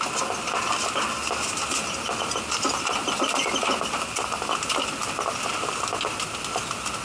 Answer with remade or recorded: recorded